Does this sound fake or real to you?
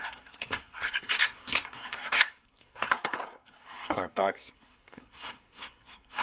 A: fake